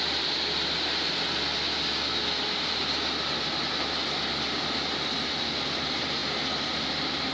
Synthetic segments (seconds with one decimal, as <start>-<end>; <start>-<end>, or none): none